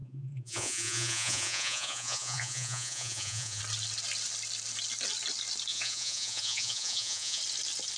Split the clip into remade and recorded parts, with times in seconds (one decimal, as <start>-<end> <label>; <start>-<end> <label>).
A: 0.0-3.6 remade; 3.6-5.7 recorded; 5.7-7.4 remade; 7.4-8.0 recorded